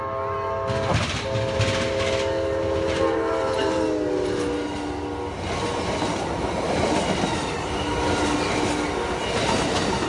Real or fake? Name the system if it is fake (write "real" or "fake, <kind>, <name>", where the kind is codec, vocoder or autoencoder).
real